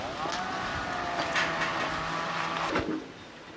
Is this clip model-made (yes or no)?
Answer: no